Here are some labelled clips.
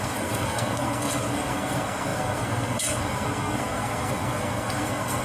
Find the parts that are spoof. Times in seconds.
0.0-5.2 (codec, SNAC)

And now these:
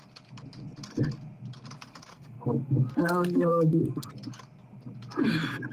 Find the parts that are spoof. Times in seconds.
2.1-4.1 (codec, SNAC)

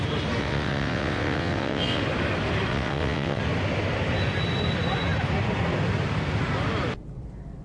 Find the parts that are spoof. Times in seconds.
0.4-2.0 (vocoder, WaveNeXt); 2.7-3.4

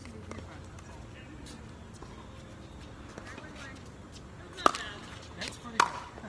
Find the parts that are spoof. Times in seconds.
none

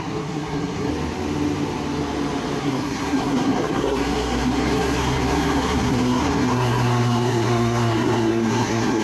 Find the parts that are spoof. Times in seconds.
0.0-0.9 (codec, SNAC); 2.6-9.0

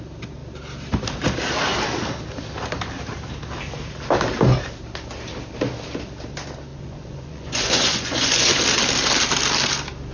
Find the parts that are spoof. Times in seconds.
6.7-8.6 (vocoder, Vocos)

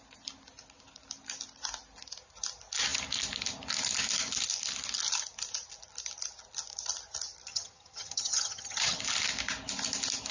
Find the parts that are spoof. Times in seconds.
7.5-9.0 (vocoder, HiFi-GAN)

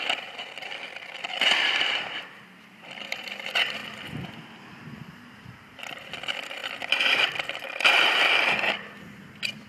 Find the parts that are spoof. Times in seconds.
0.0-3.8 (vocoder, BigVGAN v2); 4.8-9.7